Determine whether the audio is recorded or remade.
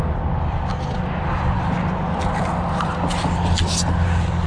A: recorded